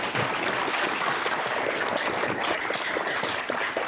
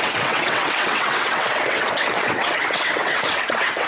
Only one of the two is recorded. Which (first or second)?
first